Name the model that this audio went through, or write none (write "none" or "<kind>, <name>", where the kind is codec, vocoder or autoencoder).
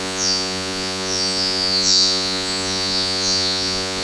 vocoder, Vocos